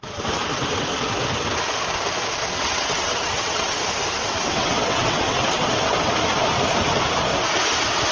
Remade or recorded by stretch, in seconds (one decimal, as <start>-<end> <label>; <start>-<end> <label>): 0.0-2.4 recorded; 2.4-3.8 remade; 3.8-4.2 recorded; 4.2-6.1 remade; 6.1-8.1 recorded